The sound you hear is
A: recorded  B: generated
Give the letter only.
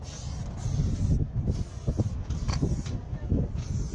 A